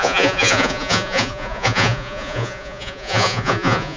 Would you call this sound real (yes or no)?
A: no